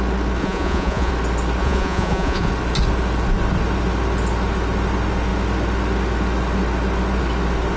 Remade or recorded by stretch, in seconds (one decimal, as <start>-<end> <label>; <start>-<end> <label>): 0.0-0.4 recorded; 0.4-1.1 remade; 1.1-1.6 recorded; 1.6-2.5 remade; 2.5-7.8 recorded